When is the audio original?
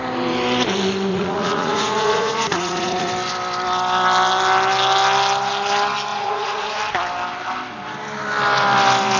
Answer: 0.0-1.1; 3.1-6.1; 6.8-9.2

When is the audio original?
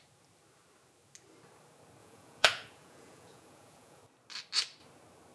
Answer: 0.0-2.0; 4.0-5.3